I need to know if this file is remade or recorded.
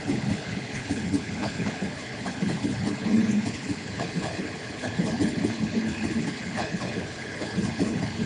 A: remade